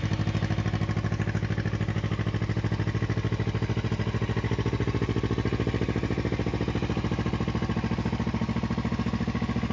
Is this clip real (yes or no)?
yes